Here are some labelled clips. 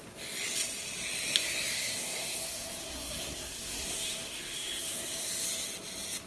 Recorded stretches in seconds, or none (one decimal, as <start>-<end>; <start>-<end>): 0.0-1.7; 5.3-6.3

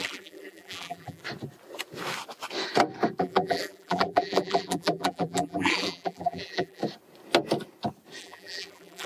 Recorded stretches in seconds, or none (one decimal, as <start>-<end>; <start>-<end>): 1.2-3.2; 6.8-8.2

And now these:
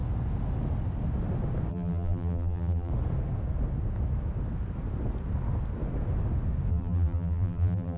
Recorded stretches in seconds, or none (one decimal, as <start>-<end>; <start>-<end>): 0.0-1.7; 2.9-6.7